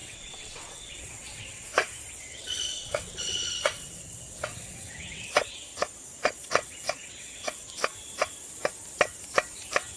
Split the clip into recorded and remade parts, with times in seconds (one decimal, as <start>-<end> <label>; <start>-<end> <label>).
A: 0.0-1.7 remade; 1.7-2.2 recorded; 2.2-5.7 remade; 5.7-6.3 recorded; 6.3-7.8 remade; 7.8-10.0 recorded